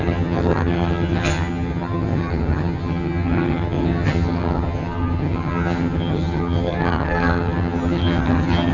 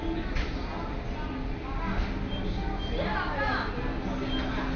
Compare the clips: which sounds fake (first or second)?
first